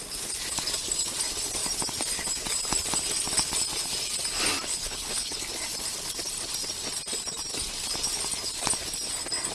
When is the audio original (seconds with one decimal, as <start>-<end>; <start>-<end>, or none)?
0.0-4.7; 5.5-9.5